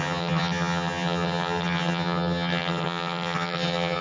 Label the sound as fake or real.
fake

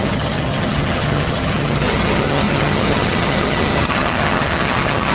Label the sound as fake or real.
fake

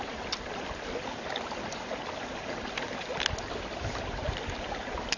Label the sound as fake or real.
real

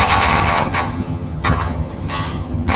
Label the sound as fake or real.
fake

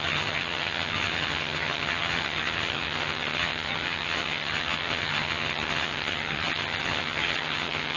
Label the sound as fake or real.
fake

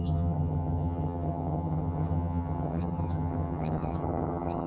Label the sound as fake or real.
fake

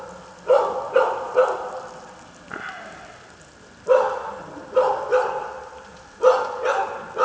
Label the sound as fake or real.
real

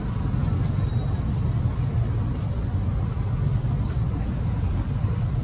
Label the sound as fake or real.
real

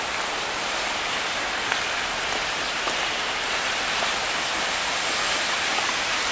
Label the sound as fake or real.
real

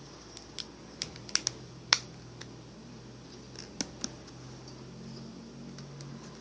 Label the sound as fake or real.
real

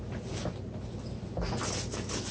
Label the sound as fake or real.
real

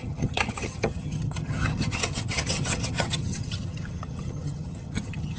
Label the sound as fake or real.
fake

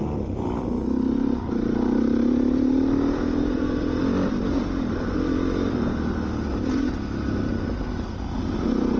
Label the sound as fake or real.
real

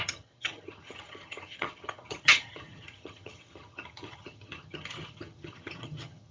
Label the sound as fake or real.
fake